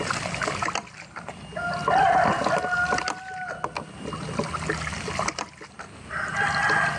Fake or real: real